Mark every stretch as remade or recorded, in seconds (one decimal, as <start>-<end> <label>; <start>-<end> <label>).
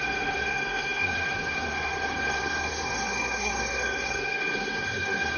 0.0-5.4 remade